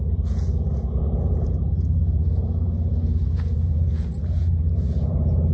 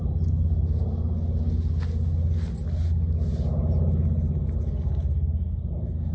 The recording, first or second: second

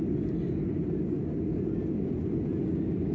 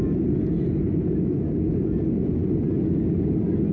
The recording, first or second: second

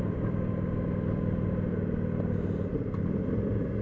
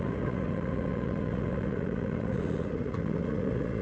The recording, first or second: first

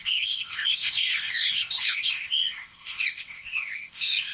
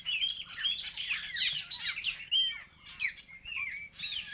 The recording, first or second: second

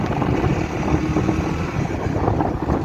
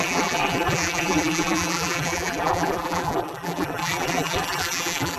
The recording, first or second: first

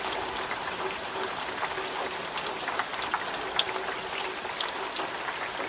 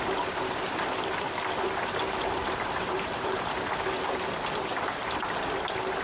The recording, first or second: first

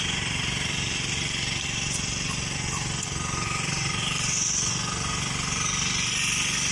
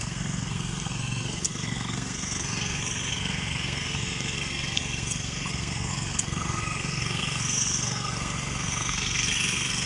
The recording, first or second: first